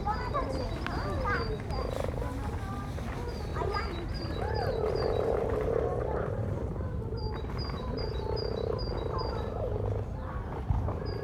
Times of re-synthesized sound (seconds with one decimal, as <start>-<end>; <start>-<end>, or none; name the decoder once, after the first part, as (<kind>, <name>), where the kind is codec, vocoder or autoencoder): 3.5-8.7 (vocoder, BigVGAN v2)